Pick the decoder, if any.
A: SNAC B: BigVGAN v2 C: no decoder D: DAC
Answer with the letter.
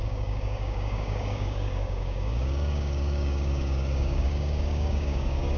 D